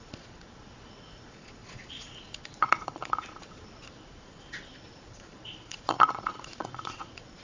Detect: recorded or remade remade